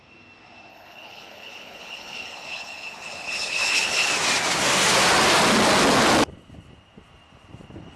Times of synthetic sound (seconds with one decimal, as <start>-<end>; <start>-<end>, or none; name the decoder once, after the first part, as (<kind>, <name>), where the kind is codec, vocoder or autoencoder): 0.7-4.1 (codec, HILCodec)